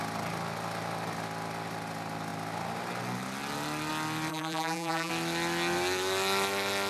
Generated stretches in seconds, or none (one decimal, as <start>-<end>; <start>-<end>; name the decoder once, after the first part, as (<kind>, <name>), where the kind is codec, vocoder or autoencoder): 4.3-5.1 (vocoder, BigVGAN v2)